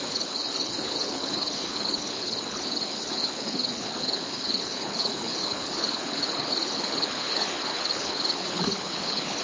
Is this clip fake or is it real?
fake